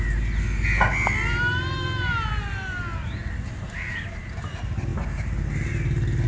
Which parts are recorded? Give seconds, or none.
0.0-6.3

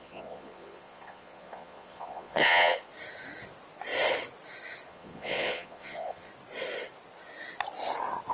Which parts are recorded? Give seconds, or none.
2.9-4.9; 6.3-8.3

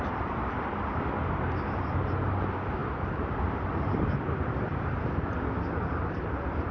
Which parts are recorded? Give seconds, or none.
0.0-6.7

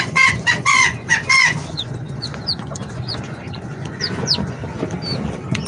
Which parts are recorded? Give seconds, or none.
4.6-5.2

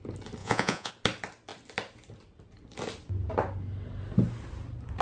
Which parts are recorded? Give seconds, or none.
0.0-0.4; 0.9-5.0

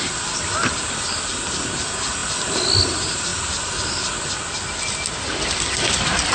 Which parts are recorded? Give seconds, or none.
0.0-6.3

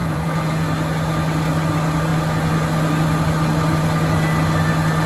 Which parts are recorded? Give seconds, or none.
0.6-5.1